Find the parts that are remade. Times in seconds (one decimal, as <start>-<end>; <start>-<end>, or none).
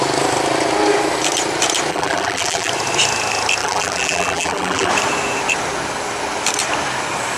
1.9-2.7; 3.6-4.9